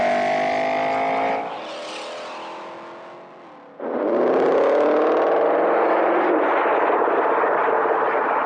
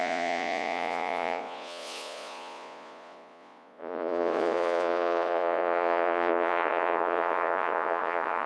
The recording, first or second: first